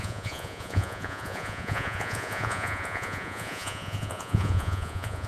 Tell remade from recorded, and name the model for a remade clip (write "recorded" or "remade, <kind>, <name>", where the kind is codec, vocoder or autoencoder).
remade, vocoder, Vocos